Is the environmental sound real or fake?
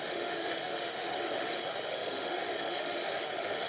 fake